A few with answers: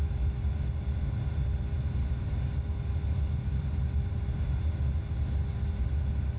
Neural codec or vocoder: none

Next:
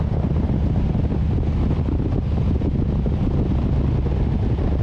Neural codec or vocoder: none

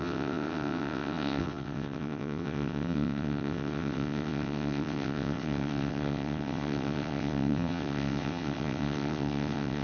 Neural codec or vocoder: vocoder, WaveNeXt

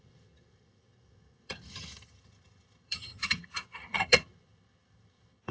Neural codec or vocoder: vocoder, HiFi-GAN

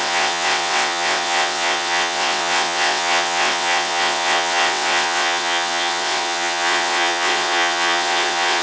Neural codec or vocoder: vocoder, WaveNeXt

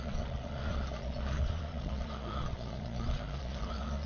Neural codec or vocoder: vocoder, Vocos